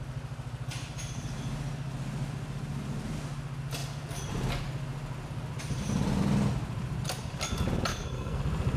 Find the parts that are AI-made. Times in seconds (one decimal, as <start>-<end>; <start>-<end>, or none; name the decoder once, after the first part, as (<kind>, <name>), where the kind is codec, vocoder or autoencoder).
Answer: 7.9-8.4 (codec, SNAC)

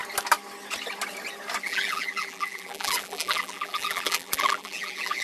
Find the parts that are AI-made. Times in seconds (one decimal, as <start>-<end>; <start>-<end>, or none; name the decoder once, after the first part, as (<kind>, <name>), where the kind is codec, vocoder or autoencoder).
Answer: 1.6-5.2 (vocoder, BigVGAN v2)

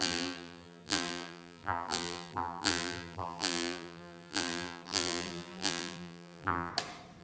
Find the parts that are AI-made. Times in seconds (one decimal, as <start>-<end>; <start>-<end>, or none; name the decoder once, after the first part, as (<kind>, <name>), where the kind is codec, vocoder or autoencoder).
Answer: 0.0-6.7 (vocoder, BigVGAN v2)

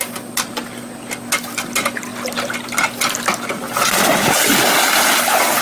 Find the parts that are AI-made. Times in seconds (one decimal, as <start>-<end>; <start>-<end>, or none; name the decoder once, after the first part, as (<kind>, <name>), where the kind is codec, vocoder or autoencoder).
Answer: none

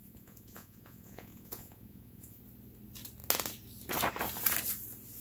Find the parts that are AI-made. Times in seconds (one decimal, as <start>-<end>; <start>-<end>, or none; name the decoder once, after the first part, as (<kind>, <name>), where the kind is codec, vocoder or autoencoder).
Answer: 0.0-2.4 (vocoder, Vocos)

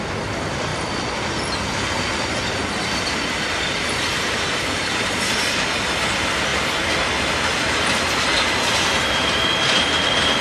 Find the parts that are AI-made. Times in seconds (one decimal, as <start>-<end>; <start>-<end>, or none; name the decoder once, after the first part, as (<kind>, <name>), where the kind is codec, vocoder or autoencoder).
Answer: none

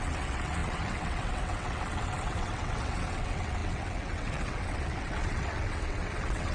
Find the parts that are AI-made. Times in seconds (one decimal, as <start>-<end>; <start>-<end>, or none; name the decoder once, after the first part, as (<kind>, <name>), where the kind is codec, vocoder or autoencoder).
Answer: 0.0-6.5 (vocoder, WaveNeXt)